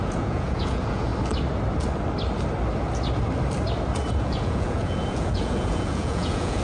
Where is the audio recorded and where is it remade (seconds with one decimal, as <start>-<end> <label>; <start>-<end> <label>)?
0.0-1.1 remade; 1.1-4.1 recorded; 4.1-6.6 remade